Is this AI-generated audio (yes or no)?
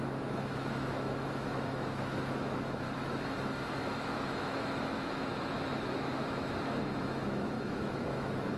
yes